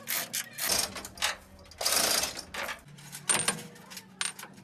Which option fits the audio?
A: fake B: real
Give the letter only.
B